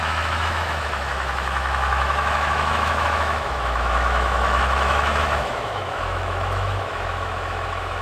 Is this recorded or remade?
remade